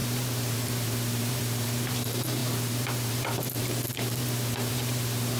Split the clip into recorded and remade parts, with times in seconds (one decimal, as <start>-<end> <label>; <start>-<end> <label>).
0.0-5.4 remade